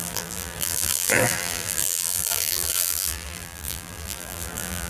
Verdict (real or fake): fake